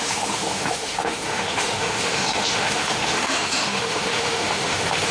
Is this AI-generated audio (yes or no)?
yes